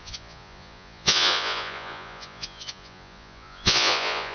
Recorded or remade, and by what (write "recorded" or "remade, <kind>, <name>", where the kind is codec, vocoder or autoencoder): remade, vocoder, Vocos